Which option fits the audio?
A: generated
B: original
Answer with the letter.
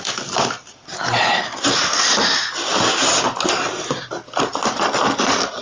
B